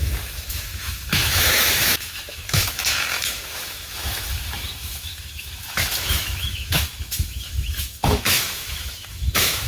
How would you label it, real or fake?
fake